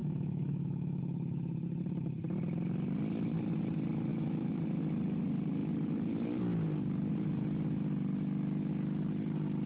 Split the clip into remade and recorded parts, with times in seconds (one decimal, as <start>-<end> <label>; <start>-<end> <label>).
0.0-1.0 remade; 1.0-4.1 recorded; 4.1-4.6 remade; 4.6-9.7 recorded